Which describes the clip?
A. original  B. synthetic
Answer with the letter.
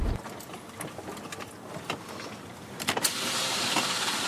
A